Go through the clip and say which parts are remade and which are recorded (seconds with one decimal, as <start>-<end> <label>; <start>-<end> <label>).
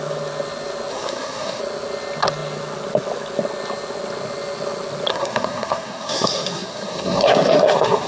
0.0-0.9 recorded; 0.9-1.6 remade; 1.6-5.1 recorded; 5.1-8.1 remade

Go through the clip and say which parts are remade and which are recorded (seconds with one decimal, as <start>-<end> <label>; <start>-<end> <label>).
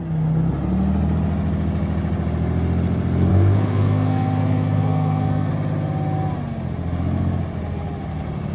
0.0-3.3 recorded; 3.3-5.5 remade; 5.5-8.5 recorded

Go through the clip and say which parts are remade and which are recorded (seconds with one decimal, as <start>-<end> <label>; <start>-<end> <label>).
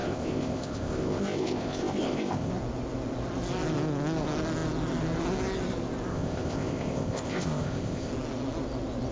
0.0-2.5 remade; 2.5-6.1 recorded; 6.1-8.1 remade; 8.1-9.1 recorded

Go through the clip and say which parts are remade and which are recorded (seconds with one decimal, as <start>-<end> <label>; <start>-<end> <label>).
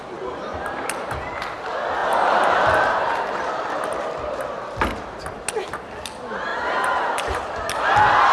0.0-2.0 recorded; 2.0-3.5 remade; 3.5-6.5 recorded; 6.5-7.6 remade; 7.6-8.3 recorded